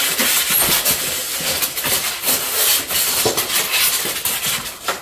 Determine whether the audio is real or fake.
real